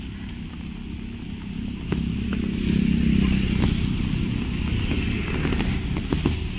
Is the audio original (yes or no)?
yes